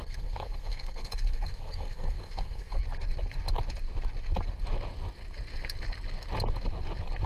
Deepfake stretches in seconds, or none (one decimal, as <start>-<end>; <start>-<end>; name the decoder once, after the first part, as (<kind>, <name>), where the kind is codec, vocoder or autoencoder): 0.0-2.8 (codec, SNAC)